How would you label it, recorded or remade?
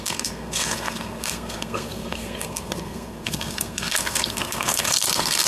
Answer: remade